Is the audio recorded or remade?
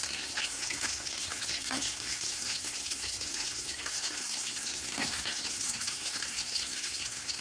remade